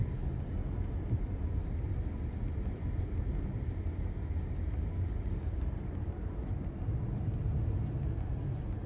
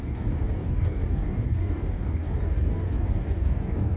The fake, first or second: second